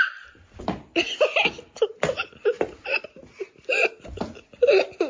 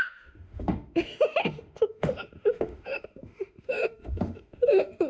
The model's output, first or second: second